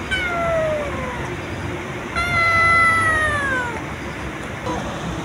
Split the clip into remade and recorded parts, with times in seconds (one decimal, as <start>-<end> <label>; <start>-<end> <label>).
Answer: 0.0-1.6 recorded; 1.6-4.7 remade; 4.7-5.2 recorded